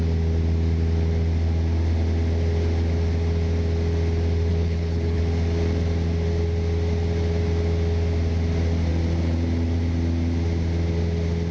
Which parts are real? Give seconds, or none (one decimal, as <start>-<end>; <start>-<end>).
0.0-4.5; 5.2-11.5